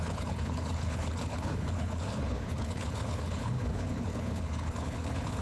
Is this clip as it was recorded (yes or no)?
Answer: no